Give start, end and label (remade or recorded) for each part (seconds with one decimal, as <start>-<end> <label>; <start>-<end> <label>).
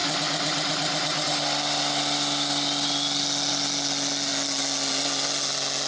0.0-5.9 recorded